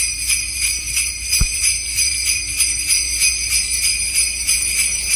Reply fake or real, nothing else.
fake